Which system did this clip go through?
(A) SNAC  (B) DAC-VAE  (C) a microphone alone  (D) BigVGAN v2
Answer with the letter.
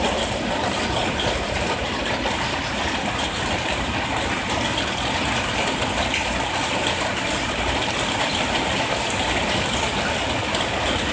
C